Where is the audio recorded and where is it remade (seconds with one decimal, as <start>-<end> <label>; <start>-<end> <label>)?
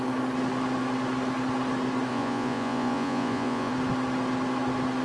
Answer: 0.0-2.1 recorded; 2.1-3.7 remade; 3.7-5.0 recorded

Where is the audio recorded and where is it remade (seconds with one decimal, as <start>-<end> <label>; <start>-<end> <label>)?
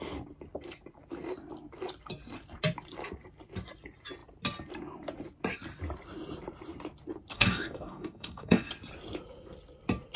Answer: 0.0-7.3 recorded; 7.3-8.7 remade; 8.7-10.2 recorded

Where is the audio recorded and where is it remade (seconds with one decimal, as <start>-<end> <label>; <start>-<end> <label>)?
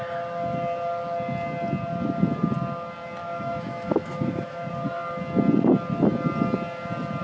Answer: 0.0-3.2 recorded; 3.2-4.7 remade; 4.7-7.2 recorded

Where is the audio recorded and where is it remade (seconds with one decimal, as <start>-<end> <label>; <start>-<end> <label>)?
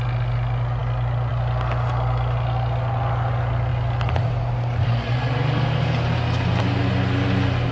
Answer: 0.0-7.7 recorded